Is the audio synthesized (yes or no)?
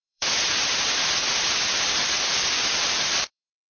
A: yes